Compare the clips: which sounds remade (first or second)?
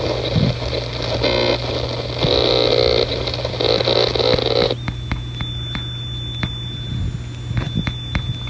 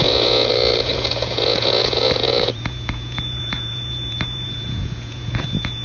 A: second